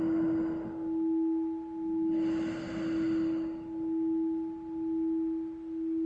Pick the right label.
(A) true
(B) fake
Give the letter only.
A